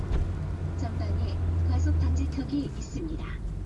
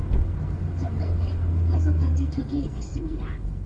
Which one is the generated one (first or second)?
second